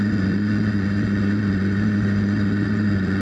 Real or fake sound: fake